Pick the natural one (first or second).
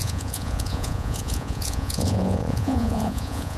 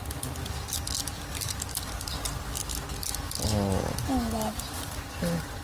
second